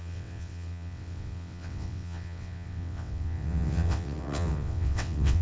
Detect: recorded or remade remade